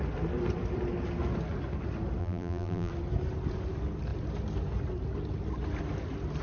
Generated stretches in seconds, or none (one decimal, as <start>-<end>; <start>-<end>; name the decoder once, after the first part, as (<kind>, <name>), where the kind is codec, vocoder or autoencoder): 2.2-2.9 (vocoder, BigVGAN v2)